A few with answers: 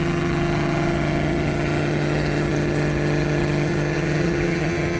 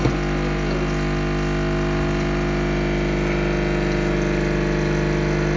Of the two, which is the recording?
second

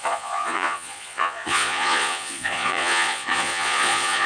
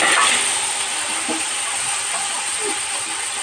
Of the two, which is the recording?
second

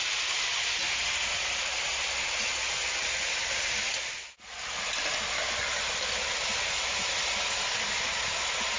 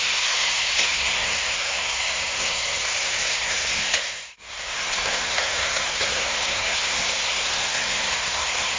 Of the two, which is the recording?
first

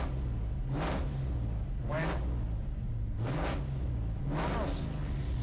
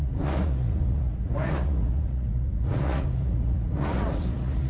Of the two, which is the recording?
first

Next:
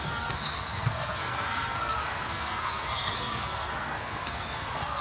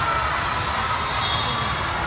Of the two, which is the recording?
second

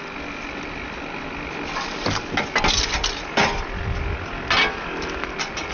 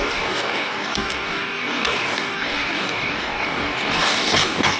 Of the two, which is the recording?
first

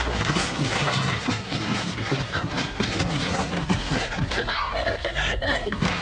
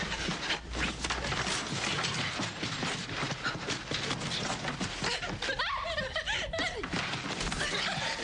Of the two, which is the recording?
second